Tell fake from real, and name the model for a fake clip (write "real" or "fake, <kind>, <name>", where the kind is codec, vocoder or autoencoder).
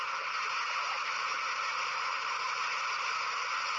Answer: real